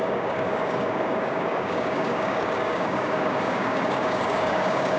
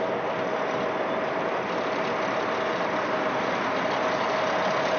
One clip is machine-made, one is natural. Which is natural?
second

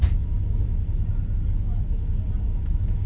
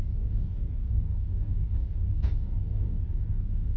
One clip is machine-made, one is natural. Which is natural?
first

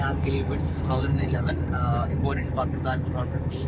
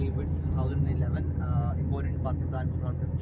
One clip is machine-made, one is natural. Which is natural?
second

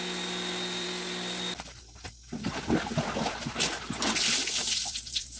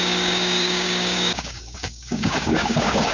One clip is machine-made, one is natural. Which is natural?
first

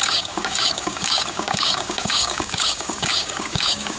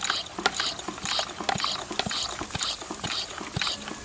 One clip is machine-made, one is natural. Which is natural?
second